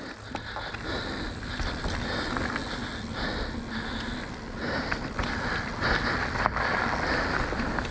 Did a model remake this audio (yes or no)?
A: no